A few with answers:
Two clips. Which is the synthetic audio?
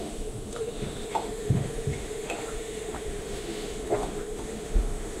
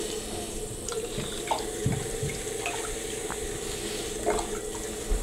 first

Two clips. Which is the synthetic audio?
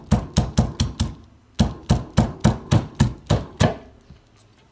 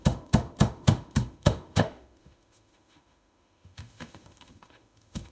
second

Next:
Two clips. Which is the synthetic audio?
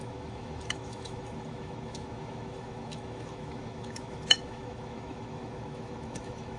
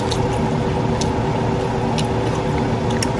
first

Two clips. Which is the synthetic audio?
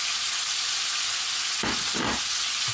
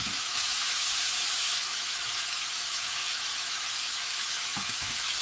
second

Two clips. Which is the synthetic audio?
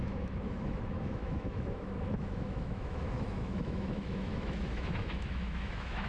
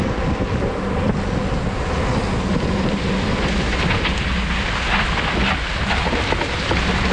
first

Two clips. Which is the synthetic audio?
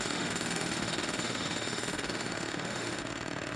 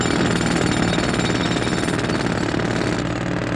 first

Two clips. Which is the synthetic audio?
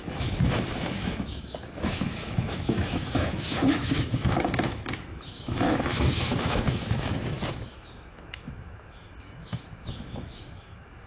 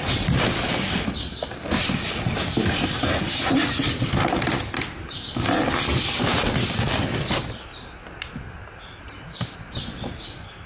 first